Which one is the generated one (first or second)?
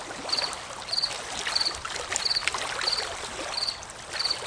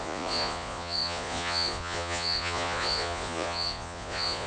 second